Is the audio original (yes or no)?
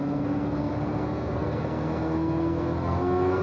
no